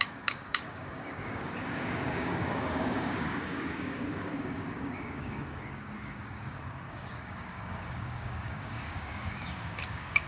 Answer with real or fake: fake